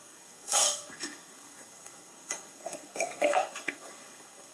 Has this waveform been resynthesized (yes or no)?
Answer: yes